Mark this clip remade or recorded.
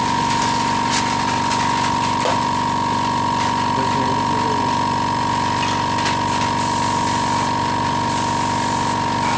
recorded